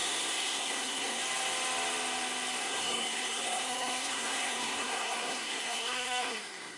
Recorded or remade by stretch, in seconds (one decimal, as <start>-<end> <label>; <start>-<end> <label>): 0.0-1.2 remade; 1.2-2.6 recorded; 2.6-6.8 remade

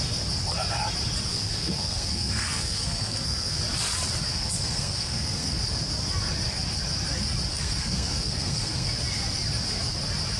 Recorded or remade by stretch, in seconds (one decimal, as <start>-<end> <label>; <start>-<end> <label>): 0.0-1.3 recorded; 1.3-3.6 remade; 3.6-4.3 recorded; 4.3-5.6 remade; 5.6-7.5 recorded; 7.5-8.9 remade; 8.9-10.4 recorded

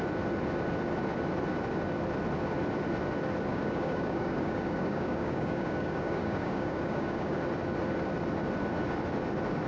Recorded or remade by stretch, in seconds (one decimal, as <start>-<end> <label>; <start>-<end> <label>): 0.0-3.5 recorded; 3.5-7.4 remade; 7.4-9.7 recorded

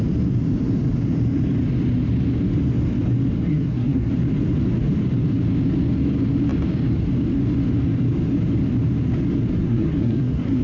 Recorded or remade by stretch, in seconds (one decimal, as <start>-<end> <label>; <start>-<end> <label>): 0.0-3.5 recorded; 3.5-4.1 remade; 4.1-9.6 recorded; 9.6-10.6 remade

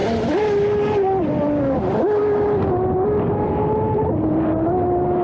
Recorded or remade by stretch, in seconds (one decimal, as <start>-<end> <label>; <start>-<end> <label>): 0.0-5.2 recorded

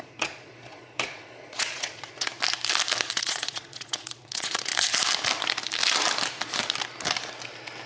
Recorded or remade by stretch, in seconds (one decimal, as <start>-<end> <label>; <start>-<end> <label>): 0.0-2.3 remade; 2.3-3.1 recorded; 3.1-4.7 remade; 4.7-7.9 recorded

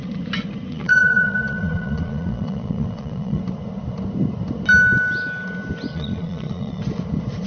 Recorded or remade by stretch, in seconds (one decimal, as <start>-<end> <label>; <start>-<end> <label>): 0.0-0.7 recorded; 0.7-3.4 remade; 3.4-5.9 recorded; 5.9-6.8 remade; 6.8-7.5 recorded

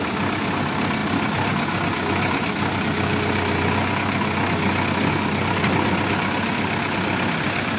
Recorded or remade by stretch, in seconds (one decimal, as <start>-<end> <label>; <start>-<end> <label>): 0.0-7.8 recorded